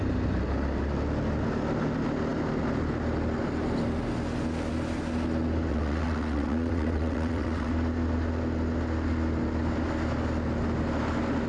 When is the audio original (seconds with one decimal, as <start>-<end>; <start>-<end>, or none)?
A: 0.0-5.7; 7.7-11.5